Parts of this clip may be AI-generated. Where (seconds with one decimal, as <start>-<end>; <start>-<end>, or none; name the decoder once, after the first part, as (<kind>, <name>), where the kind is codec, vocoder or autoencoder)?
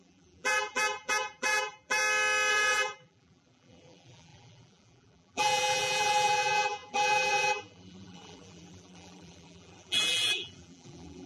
0.0-2.0 (vocoder, BigVGAN v2); 2.5-11.3